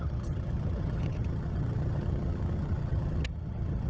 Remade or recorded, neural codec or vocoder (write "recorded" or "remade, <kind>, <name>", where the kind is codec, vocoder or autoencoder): remade, vocoder, HiFi-GAN